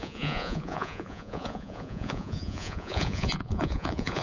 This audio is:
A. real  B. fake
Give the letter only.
B